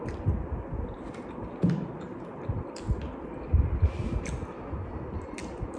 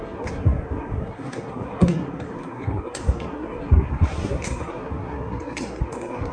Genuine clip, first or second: first